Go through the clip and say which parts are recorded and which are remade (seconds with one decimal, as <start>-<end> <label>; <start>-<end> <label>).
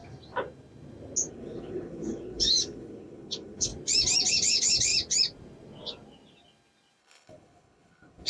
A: 0.0-1.3 recorded; 1.3-3.7 remade; 3.7-4.3 recorded; 4.3-4.9 remade; 4.9-7.0 recorded; 7.0-8.3 remade